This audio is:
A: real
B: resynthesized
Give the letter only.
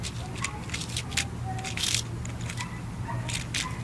A